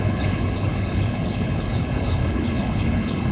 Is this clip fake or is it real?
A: fake